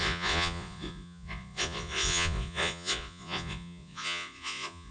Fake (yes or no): yes